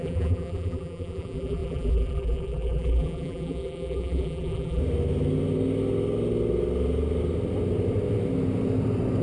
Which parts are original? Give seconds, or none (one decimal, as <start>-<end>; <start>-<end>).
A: 4.8-9.2